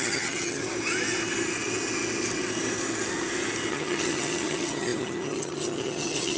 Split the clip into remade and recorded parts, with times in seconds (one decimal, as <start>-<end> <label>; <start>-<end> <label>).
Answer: 0.0-0.6 remade; 0.6-3.7 recorded; 3.7-6.4 remade